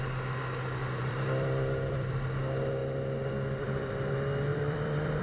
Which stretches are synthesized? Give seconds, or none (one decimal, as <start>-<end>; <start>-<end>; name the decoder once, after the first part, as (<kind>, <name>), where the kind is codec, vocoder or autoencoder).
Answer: 0.8-2.1 (vocoder, BigVGAN v2); 4.5-5.2